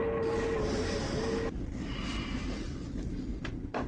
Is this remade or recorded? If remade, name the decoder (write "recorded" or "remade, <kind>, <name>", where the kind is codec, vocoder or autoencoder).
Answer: recorded